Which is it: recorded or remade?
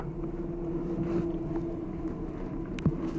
recorded